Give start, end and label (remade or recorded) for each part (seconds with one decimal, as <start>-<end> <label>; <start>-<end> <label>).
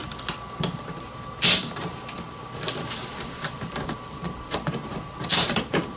0.0-0.8 recorded; 0.8-6.0 remade